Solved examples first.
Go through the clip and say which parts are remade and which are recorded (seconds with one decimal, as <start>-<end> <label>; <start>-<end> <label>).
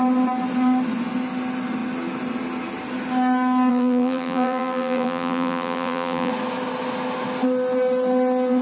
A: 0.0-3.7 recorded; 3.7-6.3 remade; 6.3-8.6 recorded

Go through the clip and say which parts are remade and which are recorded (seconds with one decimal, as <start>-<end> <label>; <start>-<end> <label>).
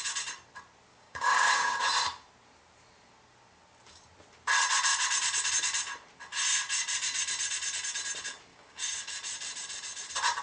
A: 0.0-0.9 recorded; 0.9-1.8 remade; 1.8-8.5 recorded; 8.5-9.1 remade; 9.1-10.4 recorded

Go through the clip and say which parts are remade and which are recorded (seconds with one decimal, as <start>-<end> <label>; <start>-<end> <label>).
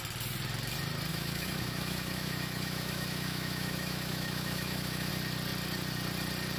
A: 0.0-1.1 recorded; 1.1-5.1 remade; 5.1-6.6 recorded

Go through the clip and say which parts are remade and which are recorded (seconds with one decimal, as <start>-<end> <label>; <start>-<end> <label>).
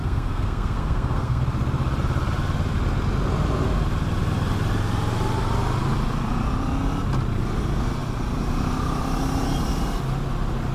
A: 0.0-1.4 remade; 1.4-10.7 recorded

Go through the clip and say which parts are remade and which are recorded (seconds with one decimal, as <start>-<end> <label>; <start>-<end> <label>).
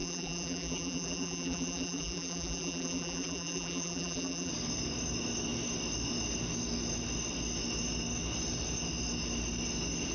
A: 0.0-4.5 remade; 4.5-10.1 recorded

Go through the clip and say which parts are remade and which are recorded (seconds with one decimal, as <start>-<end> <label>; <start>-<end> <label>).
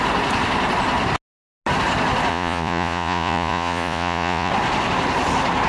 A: 0.0-2.3 recorded; 2.3-4.5 remade; 4.5-5.7 recorded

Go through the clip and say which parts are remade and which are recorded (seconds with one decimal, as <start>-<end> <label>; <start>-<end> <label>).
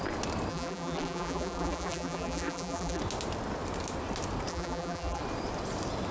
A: 0.0-0.5 recorded; 0.5-3.0 remade; 3.0-4.5 recorded; 4.5-5.2 remade; 5.2-6.1 recorded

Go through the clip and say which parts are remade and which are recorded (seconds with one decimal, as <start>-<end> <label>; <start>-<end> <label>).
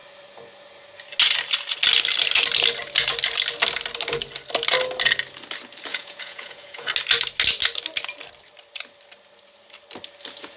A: 0.0-5.9 recorded; 5.9-6.9 remade; 6.9-10.6 recorded